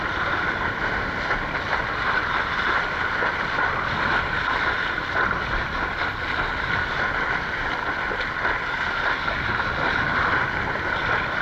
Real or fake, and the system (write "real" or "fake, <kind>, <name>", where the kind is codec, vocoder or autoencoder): real